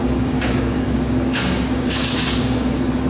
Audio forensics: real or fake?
fake